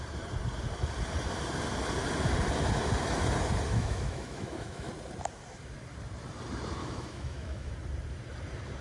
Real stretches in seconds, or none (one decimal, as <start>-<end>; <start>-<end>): 0.0-3.7; 4.9-6.8; 7.7-8.8

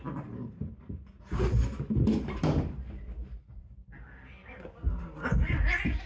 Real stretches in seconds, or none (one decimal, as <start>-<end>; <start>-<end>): 0.0-6.1

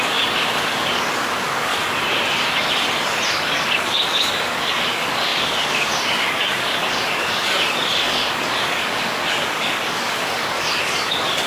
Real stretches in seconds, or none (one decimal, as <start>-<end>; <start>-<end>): 1.7-3.3

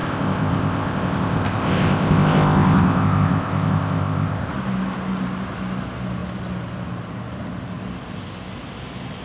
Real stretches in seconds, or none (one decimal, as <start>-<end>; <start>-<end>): 4.5-9.2